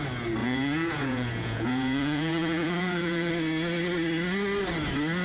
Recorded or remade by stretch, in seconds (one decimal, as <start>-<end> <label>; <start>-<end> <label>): 0.0-0.4 recorded; 0.4-3.3 remade; 3.3-5.2 recorded